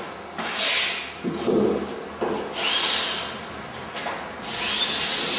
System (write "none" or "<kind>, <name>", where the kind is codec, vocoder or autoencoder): none